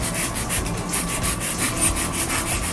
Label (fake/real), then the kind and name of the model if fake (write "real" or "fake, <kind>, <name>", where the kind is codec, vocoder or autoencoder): real